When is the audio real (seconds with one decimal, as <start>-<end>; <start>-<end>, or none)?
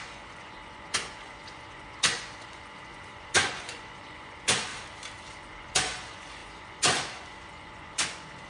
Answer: 4.7-5.3